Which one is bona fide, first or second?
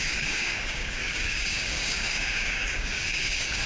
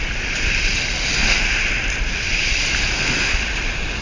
second